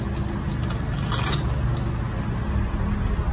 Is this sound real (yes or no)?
yes